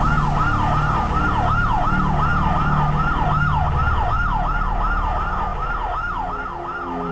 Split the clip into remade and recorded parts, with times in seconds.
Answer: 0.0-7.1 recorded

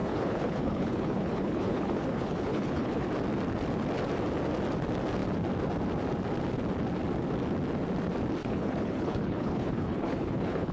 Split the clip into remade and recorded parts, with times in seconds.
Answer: 0.0-3.1 remade; 3.1-8.4 recorded; 8.4-10.7 remade

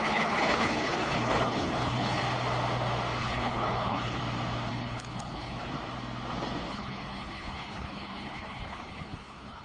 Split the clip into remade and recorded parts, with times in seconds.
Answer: 0.0-2.2 remade; 2.2-3.2 recorded; 3.2-4.2 remade; 4.2-4.7 recorded; 4.7-5.7 remade; 5.7-6.7 recorded; 6.7-9.6 remade

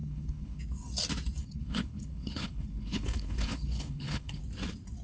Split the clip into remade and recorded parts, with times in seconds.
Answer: 0.0-0.6 remade; 0.6-1.4 recorded; 1.4-4.4 remade; 4.4-5.0 recorded

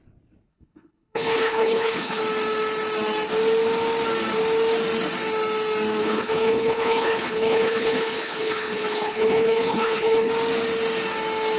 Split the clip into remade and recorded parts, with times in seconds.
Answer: 0.0-0.5 recorded; 0.5-2.2 remade; 2.2-6.0 recorded; 6.0-10.3 remade; 10.3-11.6 recorded

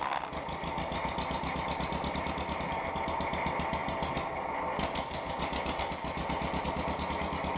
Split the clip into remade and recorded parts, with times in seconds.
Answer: 0.0-7.6 recorded

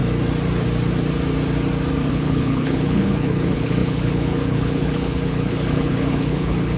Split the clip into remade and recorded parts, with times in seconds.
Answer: 0.0-2.1 recorded; 2.1-6.8 remade